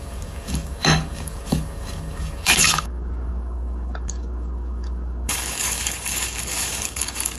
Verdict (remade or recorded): remade